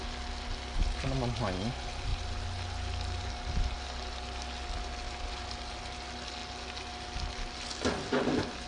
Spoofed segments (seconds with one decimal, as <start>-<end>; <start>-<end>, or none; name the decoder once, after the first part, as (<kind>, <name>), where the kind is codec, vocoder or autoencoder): none